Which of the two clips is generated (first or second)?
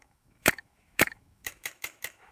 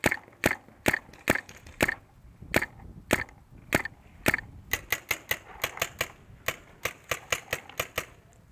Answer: first